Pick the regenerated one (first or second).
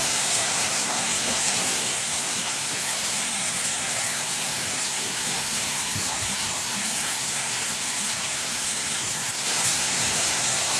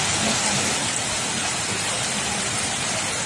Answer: first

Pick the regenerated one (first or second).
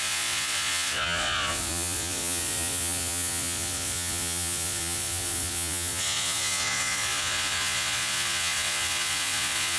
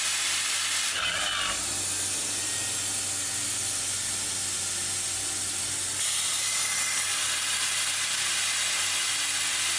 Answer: first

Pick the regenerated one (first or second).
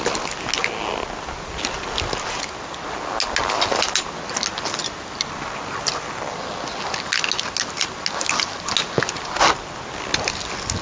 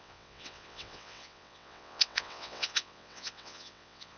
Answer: second